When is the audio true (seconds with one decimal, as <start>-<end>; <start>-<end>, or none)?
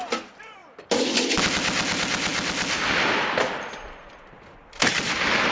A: 0.0-0.6; 1.4-5.5